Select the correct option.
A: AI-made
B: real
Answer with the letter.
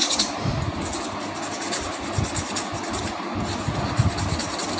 B